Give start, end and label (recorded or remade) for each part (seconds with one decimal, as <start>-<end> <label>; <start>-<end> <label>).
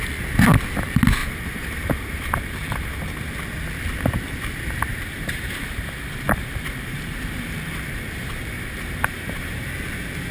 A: 0.0-1.2 recorded; 1.2-3.2 remade; 3.2-4.9 recorded; 4.9-9.7 remade; 9.7-10.3 recorded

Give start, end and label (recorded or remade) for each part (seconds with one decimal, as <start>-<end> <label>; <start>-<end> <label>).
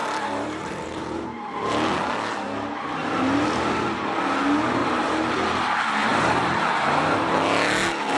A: 0.0-1.5 remade; 1.5-4.8 recorded; 4.8-5.3 remade; 5.3-6.1 recorded; 6.1-7.3 remade; 7.3-8.2 recorded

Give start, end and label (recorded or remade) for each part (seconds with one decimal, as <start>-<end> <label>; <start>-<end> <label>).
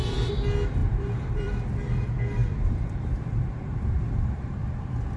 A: 0.0-0.8 recorded; 0.8-1.5 remade; 1.5-2.4 recorded; 2.4-4.7 remade; 4.7-5.2 recorded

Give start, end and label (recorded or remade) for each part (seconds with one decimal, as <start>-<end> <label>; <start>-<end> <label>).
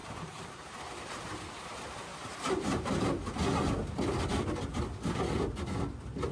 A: 0.0-1.1 remade; 1.1-2.1 recorded; 2.1-2.9 remade; 2.9-6.3 recorded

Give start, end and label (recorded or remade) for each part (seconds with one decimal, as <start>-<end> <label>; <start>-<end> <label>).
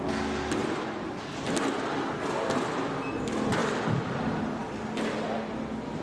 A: 0.0-0.6 recorded; 0.6-1.2 remade; 1.2-3.6 recorded; 3.6-4.6 remade; 4.6-6.0 recorded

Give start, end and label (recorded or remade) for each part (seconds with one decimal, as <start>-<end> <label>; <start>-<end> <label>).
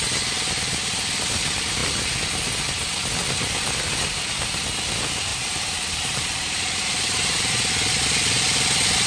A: 0.0-5.3 recorded; 5.3-7.7 remade; 7.7-9.1 recorded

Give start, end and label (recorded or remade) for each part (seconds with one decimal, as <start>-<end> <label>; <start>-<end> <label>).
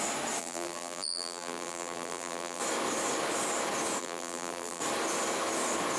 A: 0.0-0.4 recorded; 0.4-2.6 remade; 2.6-4.0 recorded; 4.0-4.8 remade; 4.8-6.0 recorded